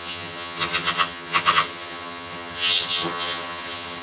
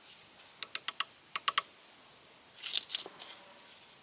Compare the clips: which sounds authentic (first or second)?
second